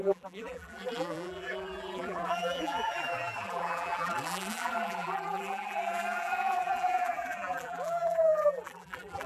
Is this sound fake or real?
fake